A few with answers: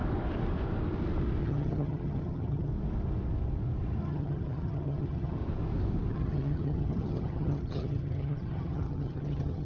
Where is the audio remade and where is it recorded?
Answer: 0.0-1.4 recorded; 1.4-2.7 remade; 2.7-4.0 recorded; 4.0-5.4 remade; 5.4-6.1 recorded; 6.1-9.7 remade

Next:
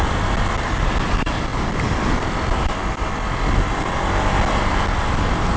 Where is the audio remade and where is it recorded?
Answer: 0.0-5.6 recorded

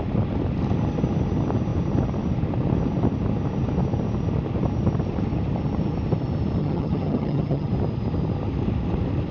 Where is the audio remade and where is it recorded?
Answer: 0.0-6.6 recorded; 6.6-7.7 remade; 7.7-9.3 recorded

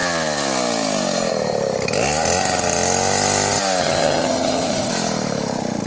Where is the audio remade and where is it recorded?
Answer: 0.0-3.8 recorded; 3.8-4.9 remade; 4.9-5.9 recorded